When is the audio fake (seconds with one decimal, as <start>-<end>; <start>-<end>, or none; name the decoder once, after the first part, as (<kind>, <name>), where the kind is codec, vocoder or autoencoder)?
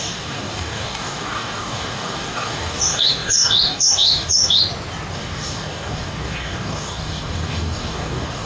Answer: 0.0-4.6 (codec, DAC); 5.1-8.5